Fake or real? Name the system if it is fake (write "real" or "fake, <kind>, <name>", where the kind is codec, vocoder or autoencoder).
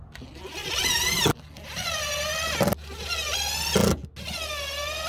real